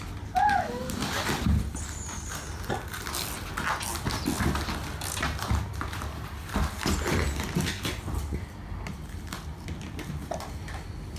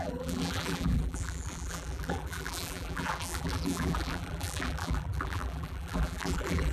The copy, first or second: second